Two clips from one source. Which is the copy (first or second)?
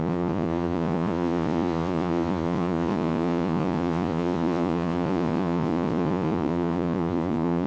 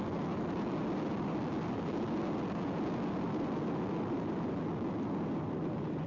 first